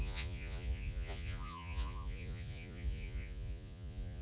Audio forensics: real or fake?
fake